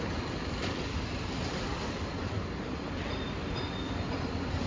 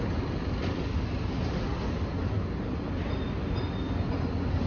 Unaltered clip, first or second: second